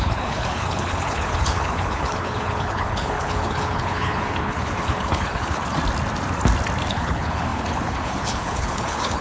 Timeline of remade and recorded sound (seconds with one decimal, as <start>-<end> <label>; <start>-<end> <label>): 0.0-5.6 remade; 5.6-6.9 recorded; 6.9-9.2 remade